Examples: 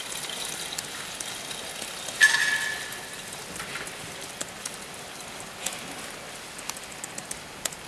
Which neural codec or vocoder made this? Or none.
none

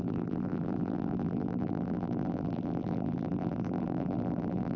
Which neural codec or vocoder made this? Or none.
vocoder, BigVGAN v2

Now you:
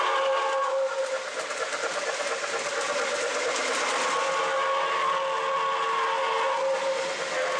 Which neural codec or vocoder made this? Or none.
none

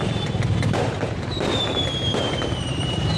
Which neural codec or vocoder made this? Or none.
vocoder, BigVGAN v2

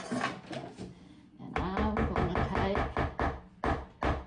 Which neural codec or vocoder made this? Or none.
none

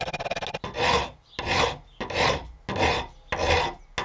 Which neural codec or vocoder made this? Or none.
none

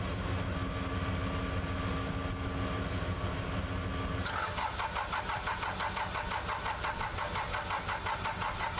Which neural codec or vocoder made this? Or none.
none